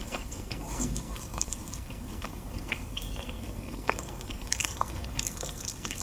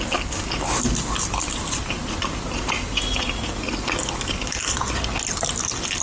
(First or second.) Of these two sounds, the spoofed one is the first